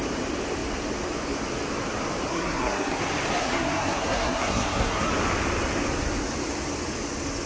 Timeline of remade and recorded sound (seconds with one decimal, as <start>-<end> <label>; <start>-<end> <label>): 0.0-2.3 recorded; 2.3-3.0 remade; 3.0-3.4 recorded; 3.4-5.1 remade; 5.1-7.5 recorded